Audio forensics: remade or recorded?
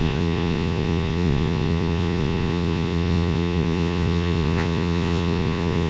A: remade